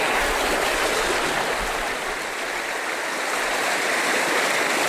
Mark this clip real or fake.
real